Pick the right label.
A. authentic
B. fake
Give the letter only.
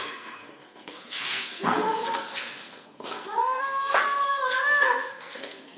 B